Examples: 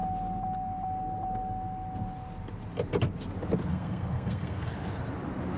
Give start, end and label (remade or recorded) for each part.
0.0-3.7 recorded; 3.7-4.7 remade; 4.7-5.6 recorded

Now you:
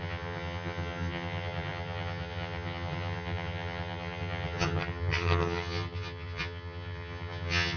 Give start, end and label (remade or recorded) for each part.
0.0-7.8 remade

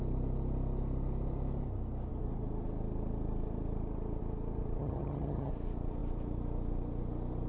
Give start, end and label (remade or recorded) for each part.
0.0-4.8 recorded; 4.8-5.5 remade; 5.5-7.5 recorded

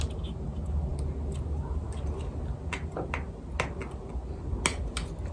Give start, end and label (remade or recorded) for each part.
0.0-5.3 recorded